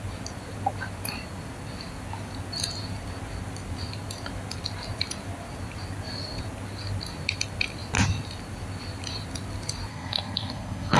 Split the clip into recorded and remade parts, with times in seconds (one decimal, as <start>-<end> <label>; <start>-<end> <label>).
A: 0.0-9.9 recorded; 9.9-11.0 remade